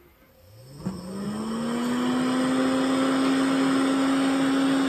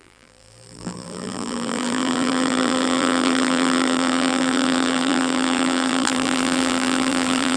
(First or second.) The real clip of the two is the first